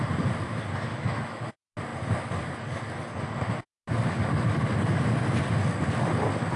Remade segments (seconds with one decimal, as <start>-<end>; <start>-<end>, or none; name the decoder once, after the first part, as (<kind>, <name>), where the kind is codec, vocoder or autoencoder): 0.9-1.5 (autoencoder, DAC-VAE)